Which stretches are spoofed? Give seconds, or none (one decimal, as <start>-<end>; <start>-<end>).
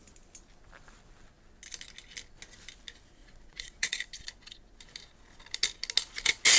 3.2-4.0